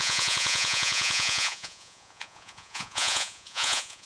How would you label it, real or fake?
fake